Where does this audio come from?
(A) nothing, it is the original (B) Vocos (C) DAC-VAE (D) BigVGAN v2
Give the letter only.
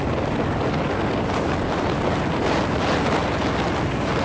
A